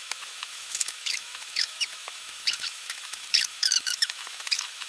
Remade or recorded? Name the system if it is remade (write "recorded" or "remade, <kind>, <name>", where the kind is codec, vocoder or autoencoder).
remade, autoencoder, DAC-VAE